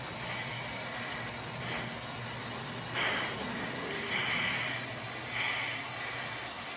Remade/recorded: recorded